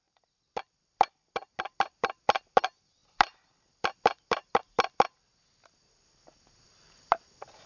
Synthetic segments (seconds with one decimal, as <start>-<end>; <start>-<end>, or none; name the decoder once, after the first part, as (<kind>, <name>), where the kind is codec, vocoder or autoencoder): none